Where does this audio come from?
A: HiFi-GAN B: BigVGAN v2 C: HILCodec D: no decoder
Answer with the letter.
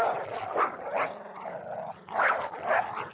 D